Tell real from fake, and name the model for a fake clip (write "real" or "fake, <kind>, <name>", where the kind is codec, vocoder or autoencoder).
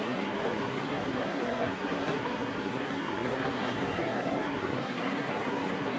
fake, codec, SNAC